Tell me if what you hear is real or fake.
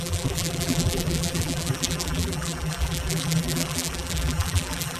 fake